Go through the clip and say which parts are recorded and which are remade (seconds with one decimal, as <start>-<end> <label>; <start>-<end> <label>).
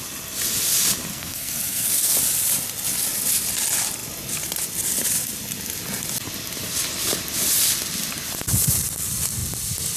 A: 0.0-1.1 recorded; 1.1-2.2 remade; 2.2-10.0 recorded